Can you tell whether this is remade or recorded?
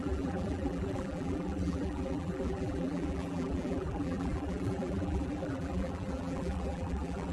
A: remade